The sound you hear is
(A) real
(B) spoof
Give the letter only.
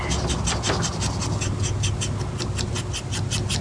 A